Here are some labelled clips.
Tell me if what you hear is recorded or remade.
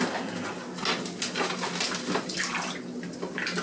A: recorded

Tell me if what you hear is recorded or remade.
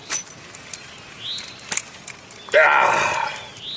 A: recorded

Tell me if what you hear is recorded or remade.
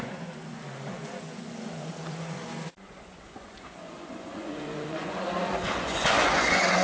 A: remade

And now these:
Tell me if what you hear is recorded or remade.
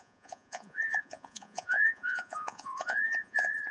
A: remade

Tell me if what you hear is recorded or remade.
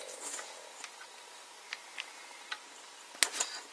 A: recorded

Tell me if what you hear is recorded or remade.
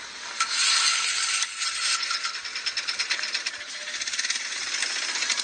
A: recorded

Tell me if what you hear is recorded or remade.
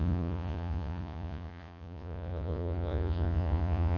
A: remade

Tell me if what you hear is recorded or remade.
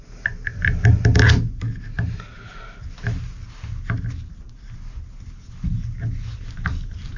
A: recorded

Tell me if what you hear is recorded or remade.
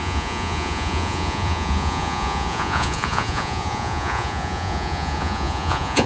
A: remade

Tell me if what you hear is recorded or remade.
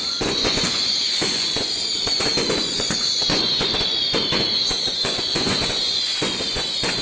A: remade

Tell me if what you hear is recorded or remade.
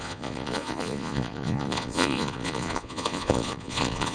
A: remade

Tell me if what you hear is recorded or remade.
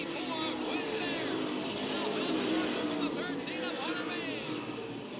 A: recorded